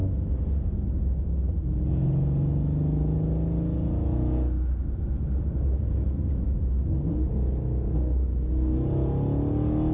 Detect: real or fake real